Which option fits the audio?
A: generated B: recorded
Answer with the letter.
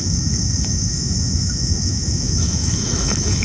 A